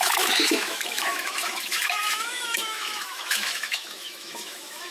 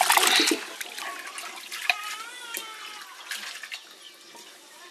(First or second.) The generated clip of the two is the first